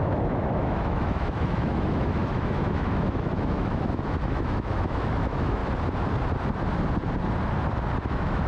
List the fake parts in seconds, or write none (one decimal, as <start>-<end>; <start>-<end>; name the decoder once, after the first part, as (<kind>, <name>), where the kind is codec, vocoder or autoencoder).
0.0-5.6 (autoencoder, DAC-VAE); 8.1-8.5

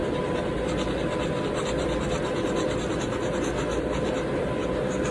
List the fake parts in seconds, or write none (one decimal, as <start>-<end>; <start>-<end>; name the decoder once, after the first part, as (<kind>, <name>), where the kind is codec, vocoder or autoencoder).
none